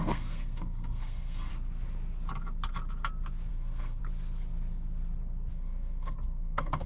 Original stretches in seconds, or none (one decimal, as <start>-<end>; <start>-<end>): 1.5-3.5; 4.0-5.5

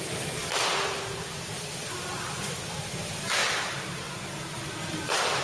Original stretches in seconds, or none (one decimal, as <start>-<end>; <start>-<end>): none

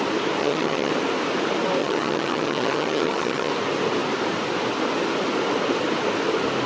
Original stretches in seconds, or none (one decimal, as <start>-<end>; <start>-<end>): 0.0-0.4; 0.9-1.8; 3.5-6.7

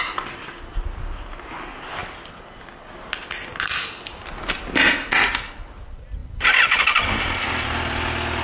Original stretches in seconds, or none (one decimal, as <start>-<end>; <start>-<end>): 0.0-8.4

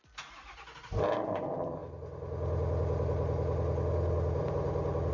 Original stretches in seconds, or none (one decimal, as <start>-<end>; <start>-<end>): 0.0-5.1

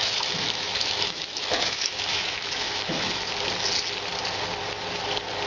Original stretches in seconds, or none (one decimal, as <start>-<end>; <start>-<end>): 3.3-5.5

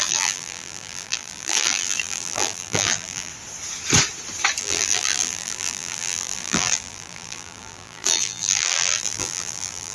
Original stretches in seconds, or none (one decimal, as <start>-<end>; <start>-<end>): 3.3-4.6

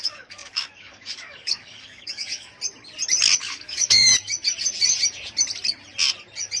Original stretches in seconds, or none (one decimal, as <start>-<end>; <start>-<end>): 2.5-3.4; 4.1-6.6